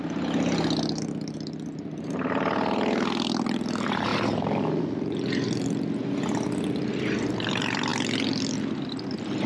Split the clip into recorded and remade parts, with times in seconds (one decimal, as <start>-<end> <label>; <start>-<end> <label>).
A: 0.0-9.5 recorded